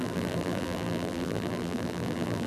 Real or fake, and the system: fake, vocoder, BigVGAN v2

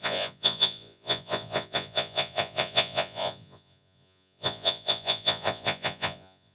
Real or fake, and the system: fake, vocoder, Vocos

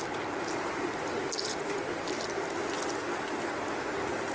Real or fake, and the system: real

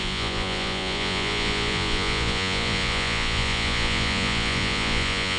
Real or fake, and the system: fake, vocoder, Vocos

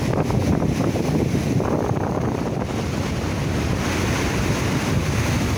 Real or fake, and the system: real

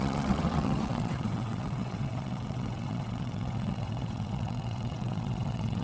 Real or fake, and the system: fake, vocoder, WaveNeXt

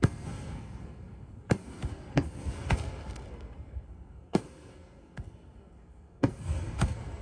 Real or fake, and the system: fake, codec, SNAC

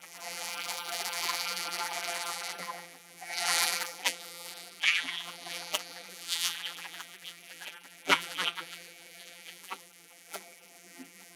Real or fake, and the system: fake, vocoder, BigVGAN v2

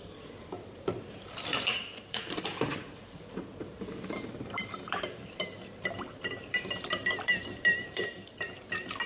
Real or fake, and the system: fake, vocoder, BigVGAN v2